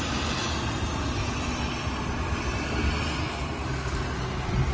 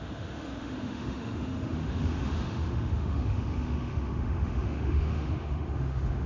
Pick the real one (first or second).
first